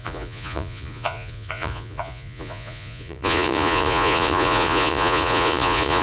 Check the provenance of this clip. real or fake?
fake